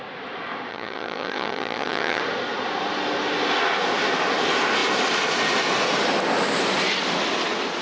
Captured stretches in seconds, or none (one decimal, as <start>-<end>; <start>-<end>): 0.0-0.7; 2.2-7.8